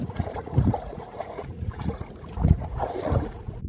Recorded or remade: remade